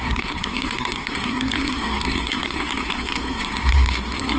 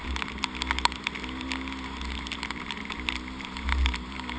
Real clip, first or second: second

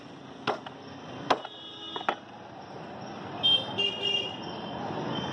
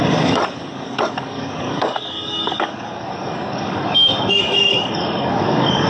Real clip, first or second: first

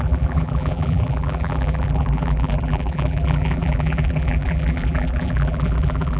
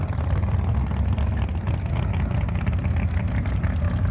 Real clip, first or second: second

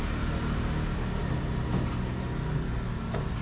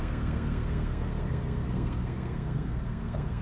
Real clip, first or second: first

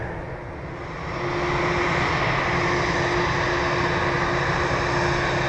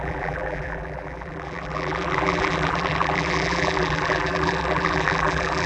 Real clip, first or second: first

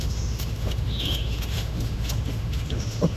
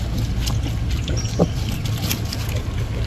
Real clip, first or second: second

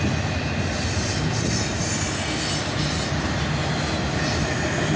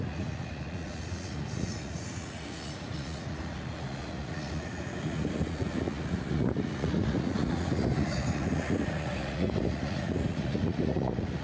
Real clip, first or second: first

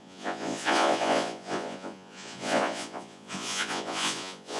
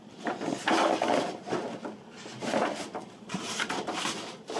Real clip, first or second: second